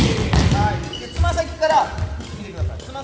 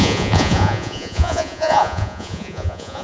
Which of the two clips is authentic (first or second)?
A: first